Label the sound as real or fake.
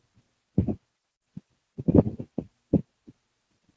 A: real